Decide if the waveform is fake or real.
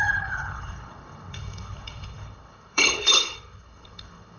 fake